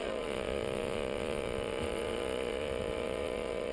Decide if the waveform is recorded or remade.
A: remade